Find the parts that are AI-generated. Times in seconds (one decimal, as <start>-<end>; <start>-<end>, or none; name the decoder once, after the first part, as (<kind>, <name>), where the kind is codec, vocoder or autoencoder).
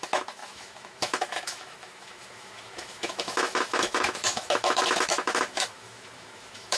0.0-6.8 (autoencoder, DAC-VAE)